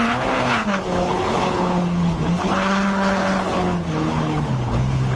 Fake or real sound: fake